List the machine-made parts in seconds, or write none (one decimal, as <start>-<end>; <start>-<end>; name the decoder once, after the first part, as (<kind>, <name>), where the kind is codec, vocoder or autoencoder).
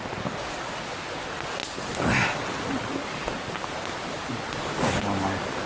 none